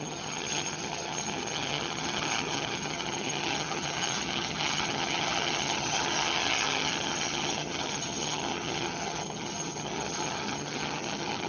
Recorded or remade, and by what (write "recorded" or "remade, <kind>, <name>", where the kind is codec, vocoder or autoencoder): remade, vocoder, HiFi-GAN